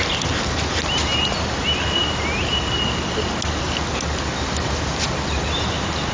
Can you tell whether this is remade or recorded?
recorded